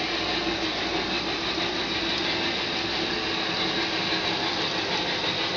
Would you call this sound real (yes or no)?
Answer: yes